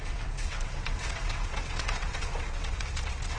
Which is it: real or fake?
fake